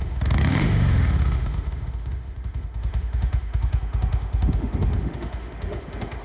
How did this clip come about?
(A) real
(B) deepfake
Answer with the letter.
B